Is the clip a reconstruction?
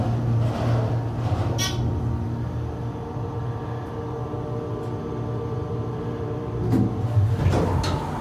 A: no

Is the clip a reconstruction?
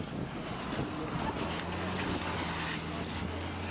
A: no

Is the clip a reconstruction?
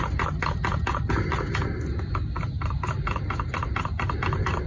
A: no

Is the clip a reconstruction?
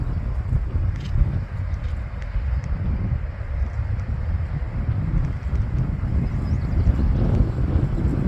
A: no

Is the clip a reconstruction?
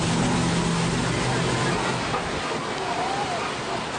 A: no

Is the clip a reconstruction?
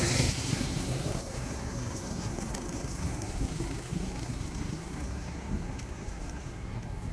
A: yes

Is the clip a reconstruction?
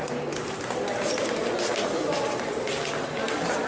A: no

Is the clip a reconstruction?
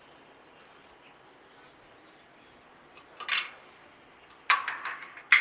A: no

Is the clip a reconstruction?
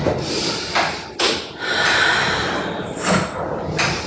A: no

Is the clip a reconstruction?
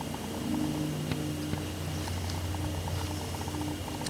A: no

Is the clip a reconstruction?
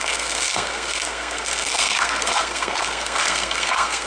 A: yes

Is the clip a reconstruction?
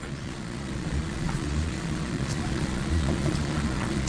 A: yes